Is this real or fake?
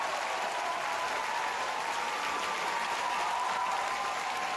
real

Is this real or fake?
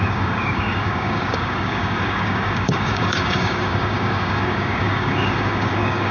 fake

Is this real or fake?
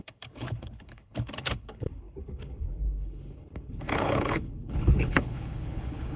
fake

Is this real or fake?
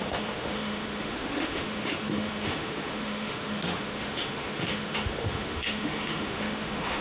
fake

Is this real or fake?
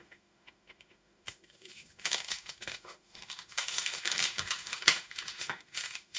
fake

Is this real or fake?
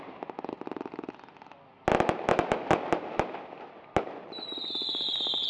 real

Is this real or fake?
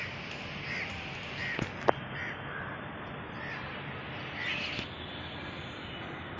real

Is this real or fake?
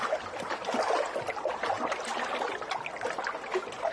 real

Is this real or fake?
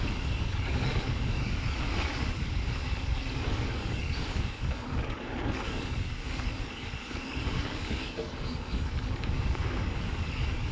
fake